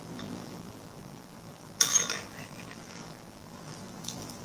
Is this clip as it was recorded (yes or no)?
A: no